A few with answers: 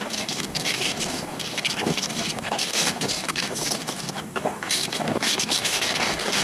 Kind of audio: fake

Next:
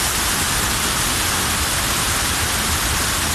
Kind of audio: fake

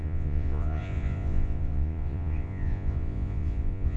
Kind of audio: fake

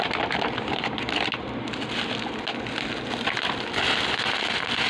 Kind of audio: real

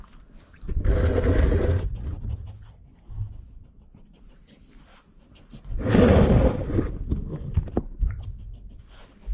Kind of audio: real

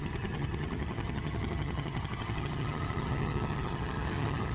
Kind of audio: fake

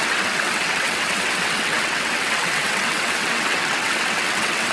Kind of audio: fake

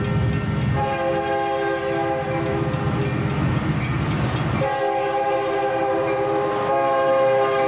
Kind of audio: real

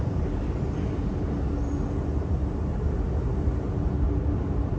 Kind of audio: real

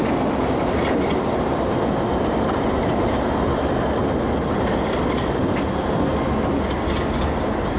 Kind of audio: real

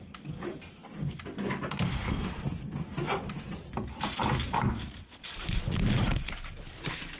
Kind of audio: real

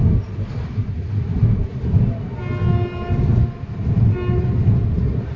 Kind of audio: real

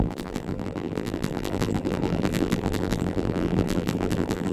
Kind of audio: fake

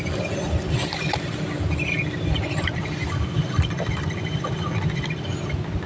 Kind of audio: real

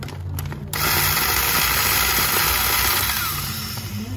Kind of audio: real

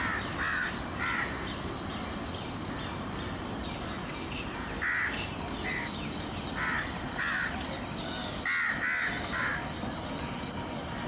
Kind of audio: real